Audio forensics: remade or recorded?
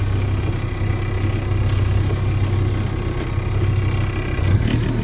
recorded